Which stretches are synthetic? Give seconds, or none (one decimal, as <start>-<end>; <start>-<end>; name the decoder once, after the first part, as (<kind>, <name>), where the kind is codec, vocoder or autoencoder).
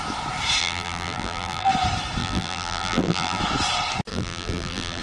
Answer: 0.6-1.7 (vocoder, BigVGAN v2); 2.2-3.4; 4.1-5.0